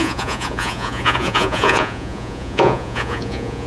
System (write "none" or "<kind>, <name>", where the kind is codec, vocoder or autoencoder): vocoder, Vocos